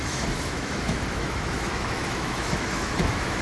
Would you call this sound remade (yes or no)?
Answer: yes